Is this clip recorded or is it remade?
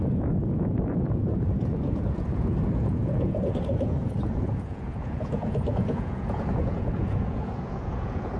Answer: remade